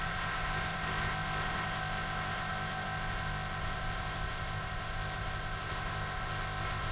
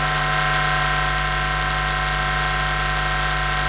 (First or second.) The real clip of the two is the second